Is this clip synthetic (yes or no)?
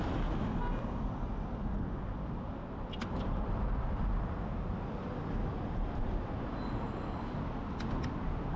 no